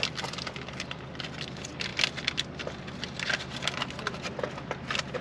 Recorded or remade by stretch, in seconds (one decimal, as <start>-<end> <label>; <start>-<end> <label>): 0.0-5.2 recorded